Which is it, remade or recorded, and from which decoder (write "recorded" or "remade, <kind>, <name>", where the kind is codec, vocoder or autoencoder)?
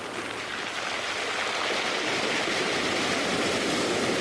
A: recorded